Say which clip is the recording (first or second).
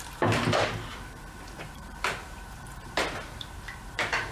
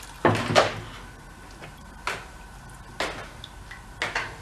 second